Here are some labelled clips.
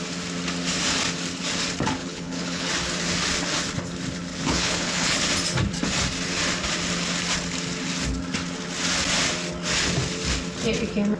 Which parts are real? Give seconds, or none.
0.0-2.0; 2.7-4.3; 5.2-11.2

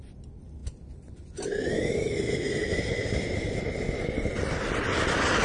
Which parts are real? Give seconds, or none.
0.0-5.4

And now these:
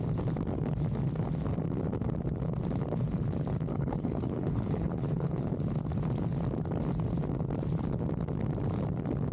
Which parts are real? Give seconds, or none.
0.0-3.7; 5.5-9.3

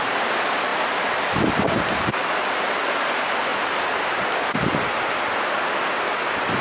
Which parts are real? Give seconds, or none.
0.0-6.6